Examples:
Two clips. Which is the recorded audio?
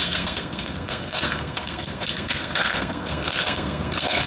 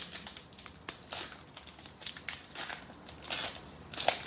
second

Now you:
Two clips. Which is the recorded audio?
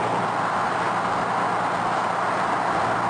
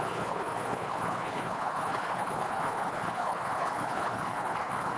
first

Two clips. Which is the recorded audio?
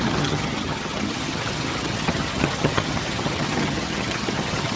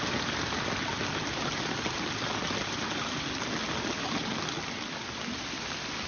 second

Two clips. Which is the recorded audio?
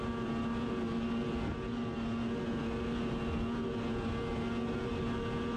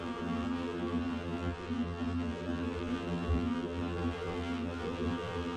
first